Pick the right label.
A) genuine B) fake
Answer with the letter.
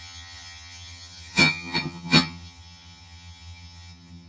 B